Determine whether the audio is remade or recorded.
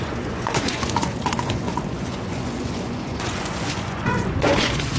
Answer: remade